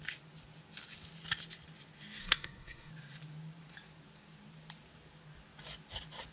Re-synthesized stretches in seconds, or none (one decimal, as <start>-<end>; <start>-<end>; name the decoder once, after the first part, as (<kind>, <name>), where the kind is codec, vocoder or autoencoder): 2.2-2.9 (codec, SNAC)

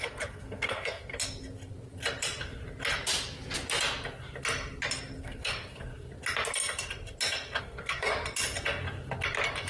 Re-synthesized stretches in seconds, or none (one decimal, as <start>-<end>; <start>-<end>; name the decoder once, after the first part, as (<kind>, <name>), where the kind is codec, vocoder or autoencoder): 0.0-1.1 (codec, SNAC); 5.2-5.9; 7.6-8.1

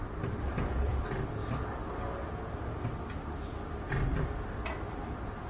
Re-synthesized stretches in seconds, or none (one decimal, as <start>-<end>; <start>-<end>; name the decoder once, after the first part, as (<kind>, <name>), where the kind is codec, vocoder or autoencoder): none